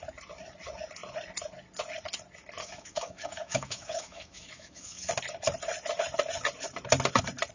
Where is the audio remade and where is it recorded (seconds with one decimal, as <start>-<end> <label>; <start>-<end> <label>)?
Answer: 0.0-2.6 recorded; 2.6-5.1 remade; 5.1-7.5 recorded